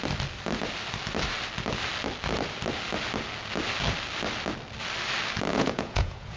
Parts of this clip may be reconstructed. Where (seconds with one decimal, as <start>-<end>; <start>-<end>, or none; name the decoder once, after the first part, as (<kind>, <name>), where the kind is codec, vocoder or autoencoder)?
5.5-6.4 (vocoder, Vocos)